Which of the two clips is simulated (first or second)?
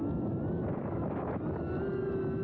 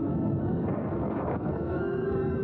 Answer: second